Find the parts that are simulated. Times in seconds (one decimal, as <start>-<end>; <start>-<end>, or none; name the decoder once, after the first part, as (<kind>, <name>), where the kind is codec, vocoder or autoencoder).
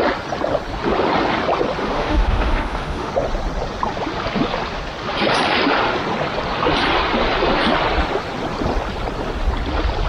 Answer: 1.8-3.1 (autoencoder, DAC-VAE)